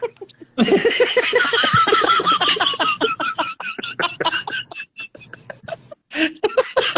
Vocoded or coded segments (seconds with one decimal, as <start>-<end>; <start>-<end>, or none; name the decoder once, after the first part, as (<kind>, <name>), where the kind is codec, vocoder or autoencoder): 1.4-5.5 (vocoder, BigVGAN v2)